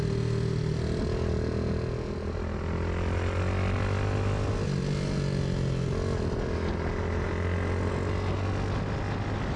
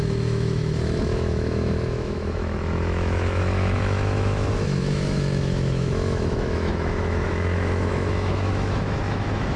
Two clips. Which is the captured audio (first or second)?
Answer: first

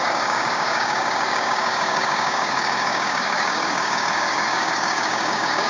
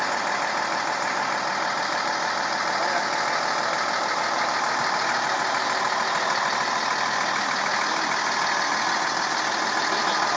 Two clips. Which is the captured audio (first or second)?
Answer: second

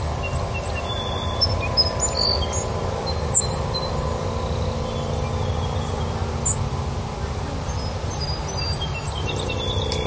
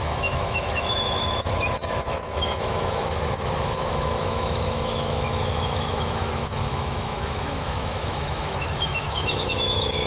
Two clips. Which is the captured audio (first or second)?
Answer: first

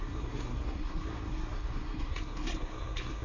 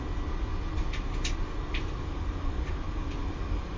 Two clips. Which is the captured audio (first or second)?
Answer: second